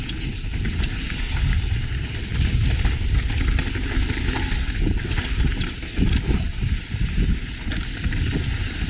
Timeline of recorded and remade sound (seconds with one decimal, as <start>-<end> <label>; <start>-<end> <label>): 0.0-8.9 recorded